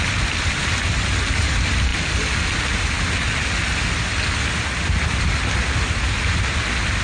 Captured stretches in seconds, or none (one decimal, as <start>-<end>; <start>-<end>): 0.0-7.0